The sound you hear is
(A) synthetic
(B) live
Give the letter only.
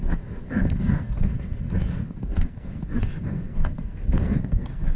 A